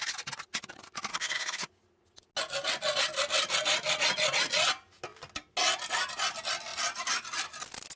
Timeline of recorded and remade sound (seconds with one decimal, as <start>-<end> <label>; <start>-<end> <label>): 0.0-1.1 recorded; 1.1-1.7 remade; 1.7-8.0 recorded